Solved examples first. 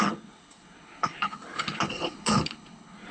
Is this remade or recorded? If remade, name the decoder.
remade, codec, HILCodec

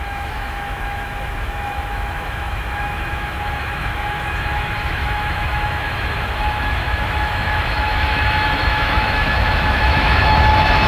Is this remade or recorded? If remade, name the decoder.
remade, autoencoder, DAC-VAE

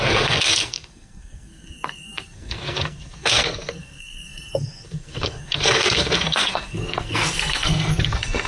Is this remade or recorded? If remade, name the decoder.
remade, codec, SNAC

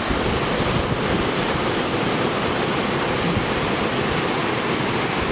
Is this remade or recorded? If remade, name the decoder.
recorded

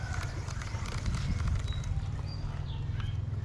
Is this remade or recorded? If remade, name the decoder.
recorded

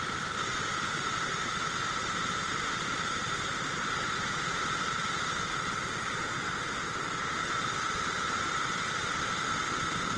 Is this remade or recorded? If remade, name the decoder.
recorded